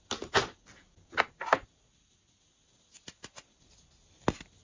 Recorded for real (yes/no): yes